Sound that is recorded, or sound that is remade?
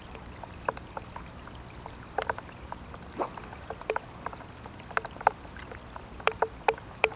remade